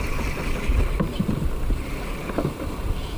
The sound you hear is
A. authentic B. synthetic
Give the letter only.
A